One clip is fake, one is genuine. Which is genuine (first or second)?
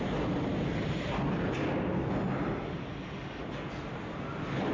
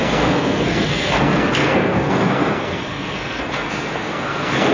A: first